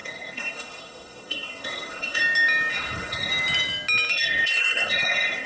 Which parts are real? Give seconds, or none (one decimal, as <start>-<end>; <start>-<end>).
2.2-2.7; 3.3-4.1

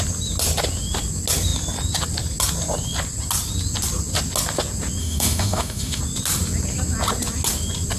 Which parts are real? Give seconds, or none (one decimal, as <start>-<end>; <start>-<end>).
0.0-5.0; 6.0-8.0

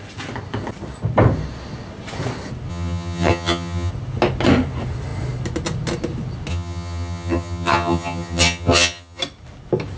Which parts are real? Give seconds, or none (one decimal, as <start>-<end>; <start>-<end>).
0.0-2.7; 3.9-6.5; 9.2-10.0

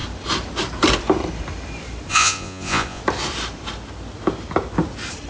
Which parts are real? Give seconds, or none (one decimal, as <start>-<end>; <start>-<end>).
0.0-2.1; 3.0-5.3

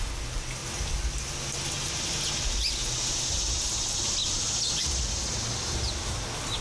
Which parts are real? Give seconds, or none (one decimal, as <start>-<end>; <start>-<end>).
0.0-6.6

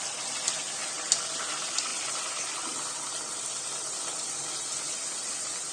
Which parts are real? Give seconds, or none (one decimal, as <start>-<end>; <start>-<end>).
0.0-5.7